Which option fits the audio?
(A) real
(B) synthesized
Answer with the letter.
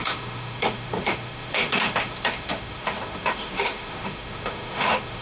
B